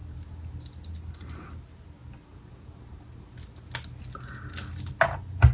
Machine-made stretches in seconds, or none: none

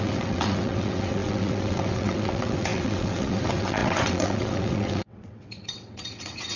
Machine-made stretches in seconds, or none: 0.0-6.6 (vocoder, WaveNeXt)

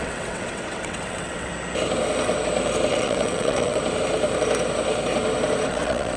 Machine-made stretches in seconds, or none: 0.0-1.5 (vocoder, WaveNeXt); 2.9-3.8; 5.7-6.2

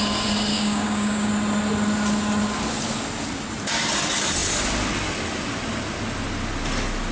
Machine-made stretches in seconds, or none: 0.5-1.3 (codec, DAC)

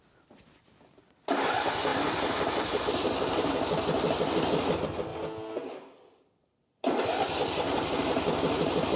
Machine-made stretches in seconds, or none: none